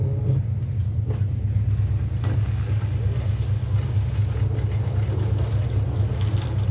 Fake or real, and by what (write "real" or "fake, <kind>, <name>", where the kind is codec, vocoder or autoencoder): real